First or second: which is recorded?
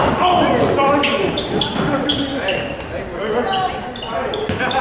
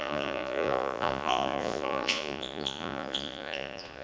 first